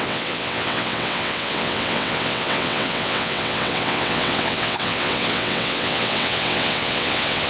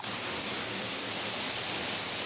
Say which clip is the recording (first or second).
second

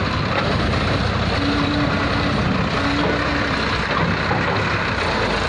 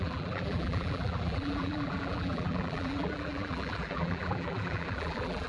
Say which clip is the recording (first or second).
first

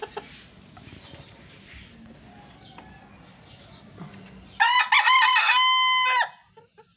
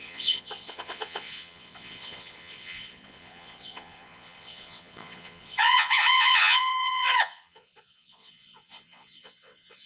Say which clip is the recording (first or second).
first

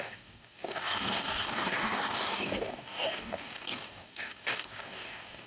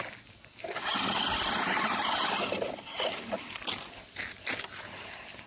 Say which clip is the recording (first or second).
second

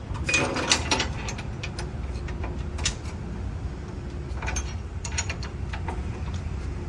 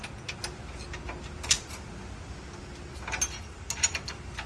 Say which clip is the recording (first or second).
second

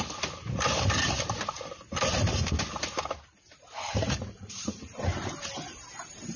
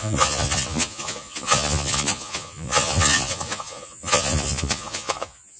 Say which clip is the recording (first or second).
first